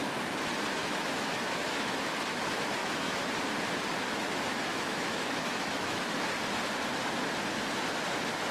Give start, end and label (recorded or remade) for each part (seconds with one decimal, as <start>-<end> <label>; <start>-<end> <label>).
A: 0.0-0.8 recorded; 0.8-2.4 remade; 2.4-2.8 recorded; 2.8-3.3 remade; 3.3-4.7 recorded; 4.7-6.2 remade; 6.2-8.5 recorded